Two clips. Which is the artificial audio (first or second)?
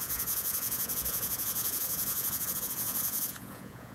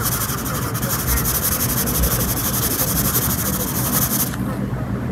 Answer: first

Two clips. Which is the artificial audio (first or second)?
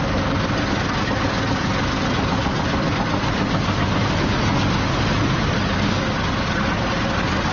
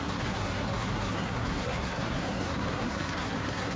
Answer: second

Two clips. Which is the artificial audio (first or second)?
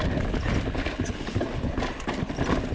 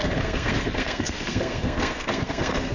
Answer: second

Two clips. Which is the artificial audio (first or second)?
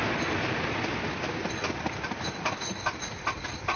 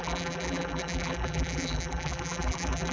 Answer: second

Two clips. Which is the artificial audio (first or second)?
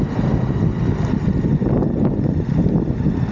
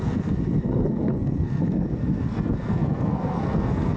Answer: second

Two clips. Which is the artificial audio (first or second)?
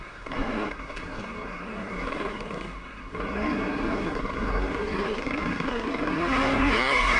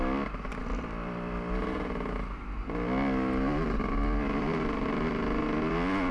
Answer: first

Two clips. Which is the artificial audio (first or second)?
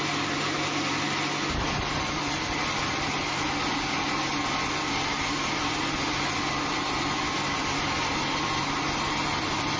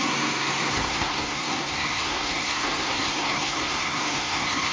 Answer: second